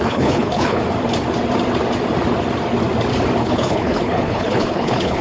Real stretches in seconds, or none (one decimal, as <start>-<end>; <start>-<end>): 0.8-3.4